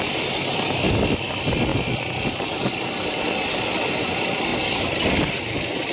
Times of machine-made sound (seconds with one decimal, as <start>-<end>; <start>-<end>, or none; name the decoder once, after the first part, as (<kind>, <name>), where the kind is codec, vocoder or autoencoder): 1.7-3.2 (vocoder, BigVGAN v2); 4.5-5.4